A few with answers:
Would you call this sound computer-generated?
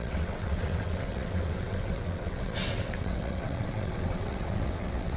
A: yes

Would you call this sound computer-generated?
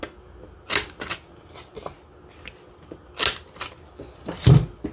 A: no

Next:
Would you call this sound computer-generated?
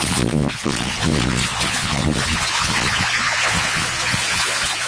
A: yes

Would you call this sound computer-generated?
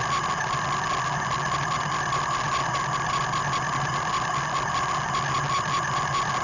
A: no